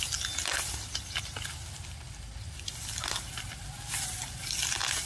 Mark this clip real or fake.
real